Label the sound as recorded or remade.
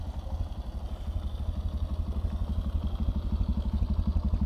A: recorded